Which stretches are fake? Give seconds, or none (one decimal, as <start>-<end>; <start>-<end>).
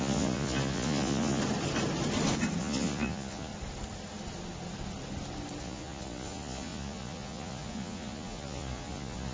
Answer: 0.0-1.4; 2.6-3.5; 5.6-9.3